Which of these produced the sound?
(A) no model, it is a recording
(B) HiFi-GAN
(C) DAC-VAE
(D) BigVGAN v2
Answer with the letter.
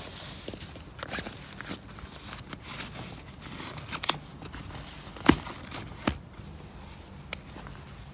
A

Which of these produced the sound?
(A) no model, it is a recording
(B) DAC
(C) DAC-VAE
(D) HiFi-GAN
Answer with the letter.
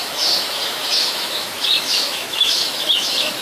C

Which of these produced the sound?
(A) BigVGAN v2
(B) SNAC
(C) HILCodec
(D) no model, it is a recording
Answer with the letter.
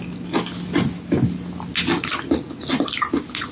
D